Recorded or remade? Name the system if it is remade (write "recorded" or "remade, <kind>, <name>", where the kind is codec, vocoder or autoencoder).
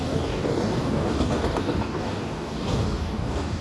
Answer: remade, codec, DAC